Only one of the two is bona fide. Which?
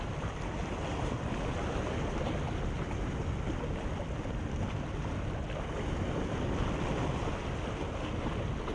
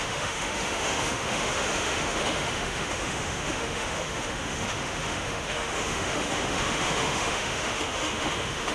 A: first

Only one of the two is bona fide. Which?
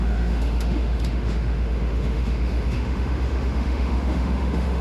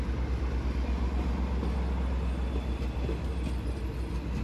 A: second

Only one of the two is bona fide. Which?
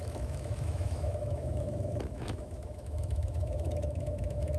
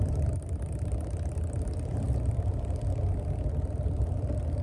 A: second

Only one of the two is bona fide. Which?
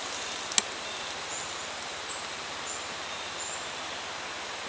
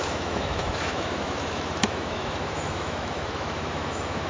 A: first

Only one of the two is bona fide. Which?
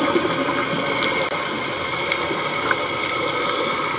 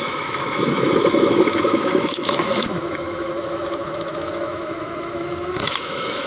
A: first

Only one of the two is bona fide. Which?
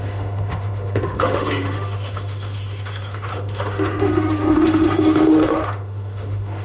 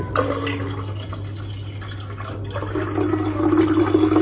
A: second